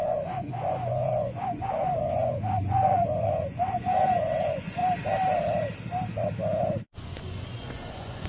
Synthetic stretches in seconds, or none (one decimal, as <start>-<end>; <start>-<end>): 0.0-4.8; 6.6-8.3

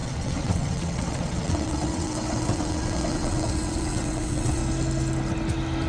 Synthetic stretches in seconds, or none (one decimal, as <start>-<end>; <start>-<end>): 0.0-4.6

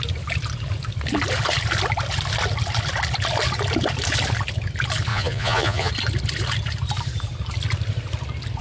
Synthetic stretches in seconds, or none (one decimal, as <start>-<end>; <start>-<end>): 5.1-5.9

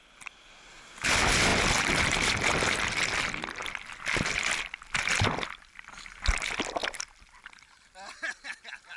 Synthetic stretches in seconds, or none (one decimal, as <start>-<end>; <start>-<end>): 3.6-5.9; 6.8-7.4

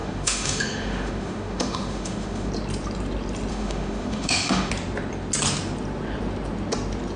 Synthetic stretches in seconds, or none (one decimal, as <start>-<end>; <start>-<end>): 0.0-2.5; 3.5-4.7

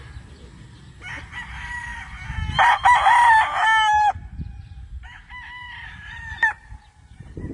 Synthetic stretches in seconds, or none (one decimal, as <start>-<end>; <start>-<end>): none